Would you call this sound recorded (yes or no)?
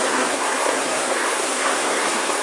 no